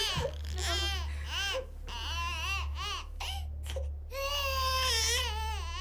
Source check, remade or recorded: recorded